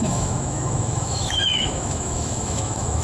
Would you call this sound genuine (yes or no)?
no